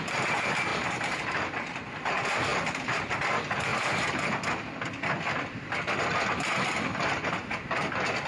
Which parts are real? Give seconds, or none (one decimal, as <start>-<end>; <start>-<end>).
0.0-0.7; 2.1-2.5; 3.2-3.7; 4.3-8.3